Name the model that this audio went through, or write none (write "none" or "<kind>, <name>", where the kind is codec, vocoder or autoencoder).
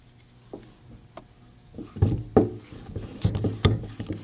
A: none